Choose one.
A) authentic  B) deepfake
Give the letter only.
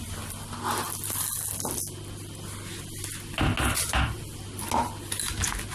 A